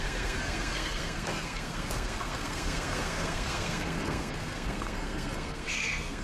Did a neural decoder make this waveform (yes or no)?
yes